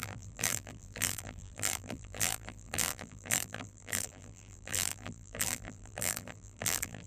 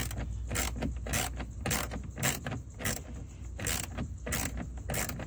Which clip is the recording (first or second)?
second